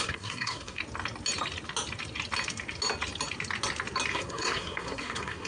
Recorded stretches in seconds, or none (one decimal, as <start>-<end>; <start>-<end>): 0.8-4.1